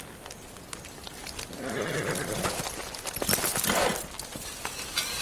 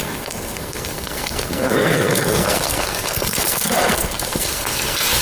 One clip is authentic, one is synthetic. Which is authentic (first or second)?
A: first